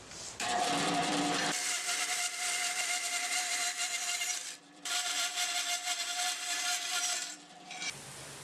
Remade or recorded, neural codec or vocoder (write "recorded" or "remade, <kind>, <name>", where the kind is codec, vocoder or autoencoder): remade, vocoder, BigVGAN v2